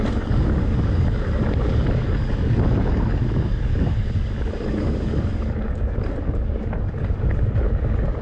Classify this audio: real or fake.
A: fake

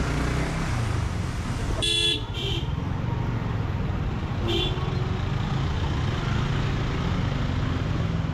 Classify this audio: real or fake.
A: real